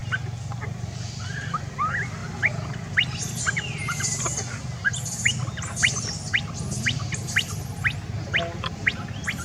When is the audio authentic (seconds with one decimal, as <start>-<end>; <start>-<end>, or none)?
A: 0.0-9.4